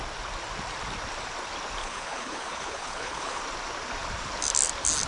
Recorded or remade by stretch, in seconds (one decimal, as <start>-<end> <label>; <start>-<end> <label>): 0.0-1.8 recorded; 1.8-3.4 remade; 3.4-5.1 recorded